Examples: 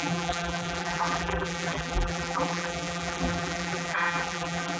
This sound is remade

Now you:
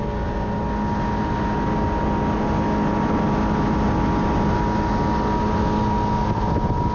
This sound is recorded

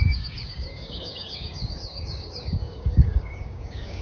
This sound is remade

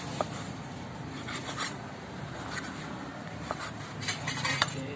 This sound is remade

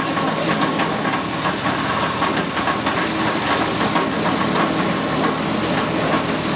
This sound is recorded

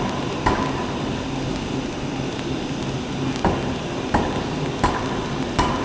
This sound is recorded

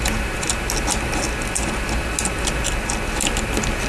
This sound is recorded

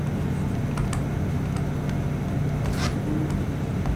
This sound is recorded